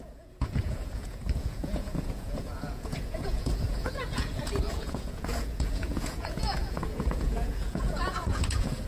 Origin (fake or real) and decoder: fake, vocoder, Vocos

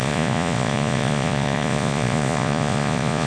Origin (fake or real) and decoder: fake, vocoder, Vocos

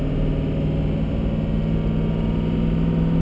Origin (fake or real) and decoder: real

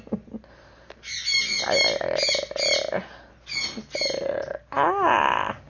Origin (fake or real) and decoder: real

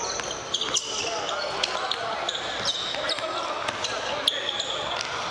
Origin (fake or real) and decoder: real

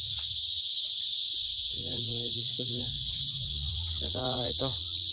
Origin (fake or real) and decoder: fake, vocoder, Vocos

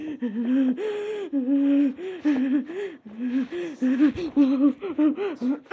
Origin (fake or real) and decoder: real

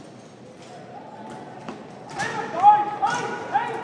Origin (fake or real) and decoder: real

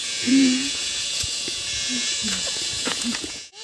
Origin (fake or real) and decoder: fake, vocoder, Vocos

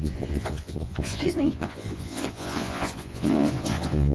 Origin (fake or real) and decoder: fake, vocoder, Vocos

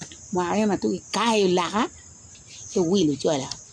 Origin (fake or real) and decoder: real